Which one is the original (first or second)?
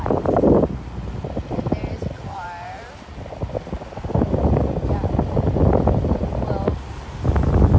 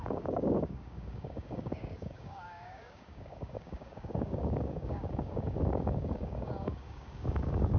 first